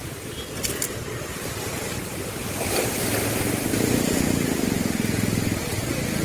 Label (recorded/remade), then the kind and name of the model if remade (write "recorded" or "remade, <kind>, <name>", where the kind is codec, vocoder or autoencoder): recorded